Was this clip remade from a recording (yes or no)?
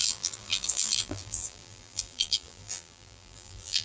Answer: yes